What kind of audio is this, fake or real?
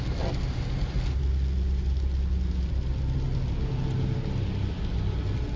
real